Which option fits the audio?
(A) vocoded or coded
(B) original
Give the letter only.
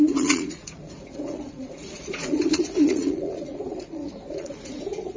A